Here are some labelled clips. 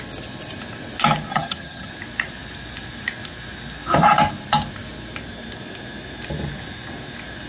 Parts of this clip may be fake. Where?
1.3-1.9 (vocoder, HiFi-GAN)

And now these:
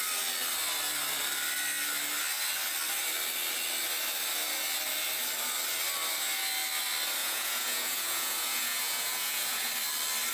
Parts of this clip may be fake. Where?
7.2-9.7 (vocoder, Vocos)

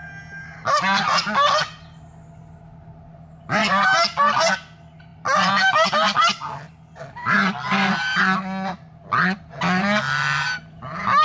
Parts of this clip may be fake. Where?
none

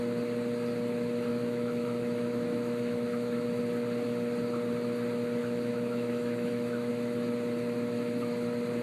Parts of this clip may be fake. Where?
1.3-3.6 (autoencoder, DAC-VAE); 5.4-6.9

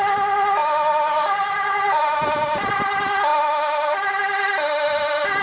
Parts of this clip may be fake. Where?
none

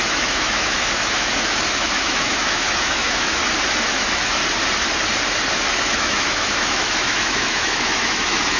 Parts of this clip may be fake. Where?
0.0-3.4 (autoencoder, DAC-VAE); 3.9-4.4; 5.8-8.6